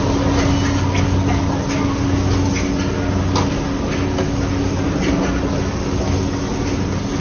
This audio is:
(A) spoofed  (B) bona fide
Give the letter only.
B